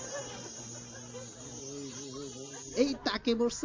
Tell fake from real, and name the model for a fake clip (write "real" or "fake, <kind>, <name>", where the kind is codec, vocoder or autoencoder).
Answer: real